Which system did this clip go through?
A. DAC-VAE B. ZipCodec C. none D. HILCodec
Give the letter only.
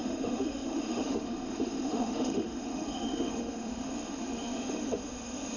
A